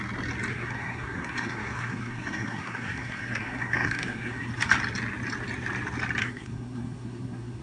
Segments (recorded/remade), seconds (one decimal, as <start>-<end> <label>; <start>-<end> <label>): 0.0-0.5 recorded; 0.5-4.5 remade; 4.5-6.2 recorded; 6.2-7.6 remade